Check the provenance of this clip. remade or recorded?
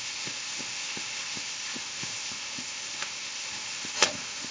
remade